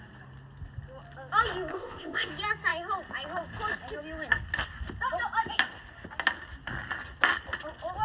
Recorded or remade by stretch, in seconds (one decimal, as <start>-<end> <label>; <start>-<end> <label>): 0.0-1.7 recorded; 1.7-2.3 remade; 2.3-8.0 recorded